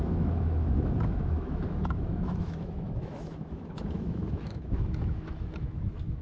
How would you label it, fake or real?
fake